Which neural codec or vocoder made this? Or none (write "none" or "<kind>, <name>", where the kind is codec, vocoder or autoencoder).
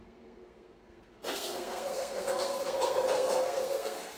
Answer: codec, SNAC